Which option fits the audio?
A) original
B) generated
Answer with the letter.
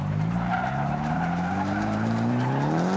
B